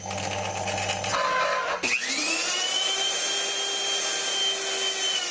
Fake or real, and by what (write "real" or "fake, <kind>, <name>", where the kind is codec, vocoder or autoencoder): real